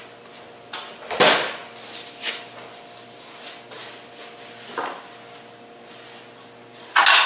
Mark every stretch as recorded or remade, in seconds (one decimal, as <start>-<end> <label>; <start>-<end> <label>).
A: 0.0-7.3 recorded